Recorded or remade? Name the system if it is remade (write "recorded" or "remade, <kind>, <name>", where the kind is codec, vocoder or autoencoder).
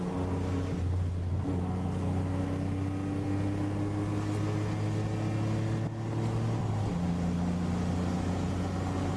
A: recorded